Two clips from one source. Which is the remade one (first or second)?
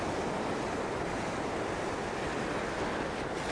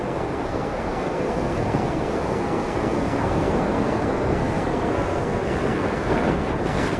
second